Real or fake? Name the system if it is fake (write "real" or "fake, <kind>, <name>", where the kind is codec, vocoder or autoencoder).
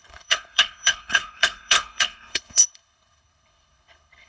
fake, codec, HILCodec